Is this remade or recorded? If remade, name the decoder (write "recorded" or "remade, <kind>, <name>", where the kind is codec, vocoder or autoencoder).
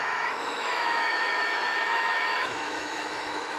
remade, autoencoder, DAC-VAE